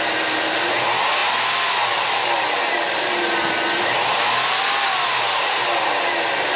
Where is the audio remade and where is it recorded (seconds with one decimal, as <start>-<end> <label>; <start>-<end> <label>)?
0.0-6.6 recorded